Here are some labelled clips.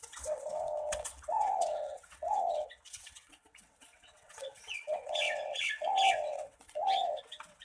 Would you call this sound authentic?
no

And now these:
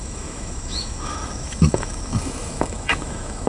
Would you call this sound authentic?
no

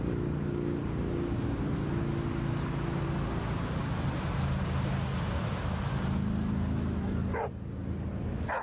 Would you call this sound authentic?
yes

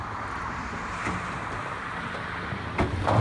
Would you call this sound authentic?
yes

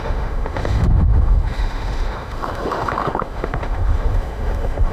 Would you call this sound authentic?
no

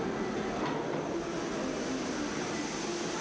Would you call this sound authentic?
yes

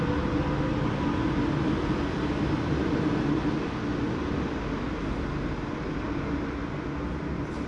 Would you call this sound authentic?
yes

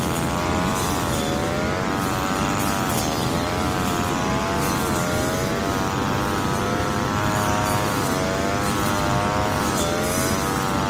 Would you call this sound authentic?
yes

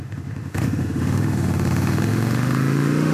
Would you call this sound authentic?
no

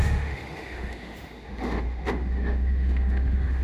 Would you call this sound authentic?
no